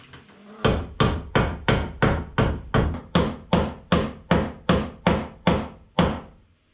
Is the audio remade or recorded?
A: recorded